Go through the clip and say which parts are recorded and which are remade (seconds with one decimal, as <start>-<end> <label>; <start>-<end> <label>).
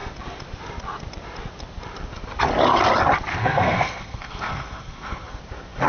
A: 0.0-3.3 recorded; 3.3-5.4 remade; 5.4-5.9 recorded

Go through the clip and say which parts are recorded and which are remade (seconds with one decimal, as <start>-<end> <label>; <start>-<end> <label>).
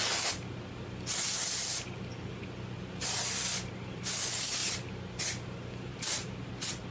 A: 0.0-6.9 recorded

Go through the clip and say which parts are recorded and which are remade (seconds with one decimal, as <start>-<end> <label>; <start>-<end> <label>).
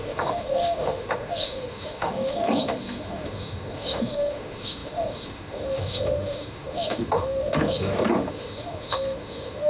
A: 0.0-9.7 remade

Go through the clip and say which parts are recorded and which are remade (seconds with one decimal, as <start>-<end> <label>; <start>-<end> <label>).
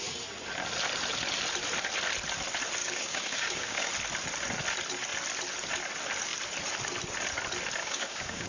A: 0.0-2.8 recorded; 2.8-3.9 remade; 3.9-7.8 recorded; 7.8-8.5 remade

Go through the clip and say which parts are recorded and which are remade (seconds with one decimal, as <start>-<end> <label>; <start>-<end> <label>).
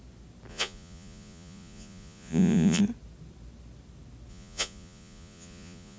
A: 0.0-0.5 recorded; 0.5-2.8 remade; 2.8-4.3 recorded; 4.3-6.0 remade